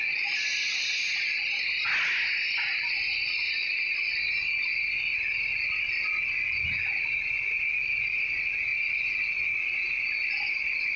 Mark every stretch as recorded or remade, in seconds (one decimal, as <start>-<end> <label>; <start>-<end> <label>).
0.0-11.0 recorded